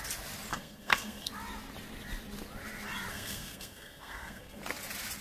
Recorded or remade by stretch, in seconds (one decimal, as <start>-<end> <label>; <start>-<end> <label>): 0.0-0.5 recorded; 0.5-1.3 remade; 1.3-3.1 recorded; 3.1-4.6 remade; 4.6-5.2 recorded

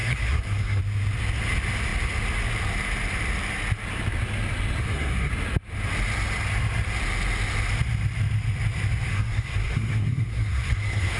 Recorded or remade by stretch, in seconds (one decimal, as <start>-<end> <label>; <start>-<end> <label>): 0.0-0.8 remade; 0.8-4.8 recorded; 4.8-5.3 remade; 5.3-9.1 recorded; 9.1-11.2 remade